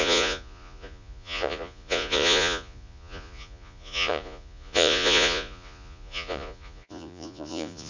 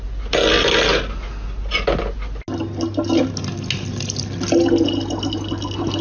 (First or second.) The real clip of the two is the second